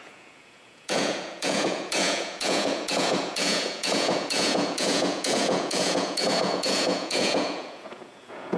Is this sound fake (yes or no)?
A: yes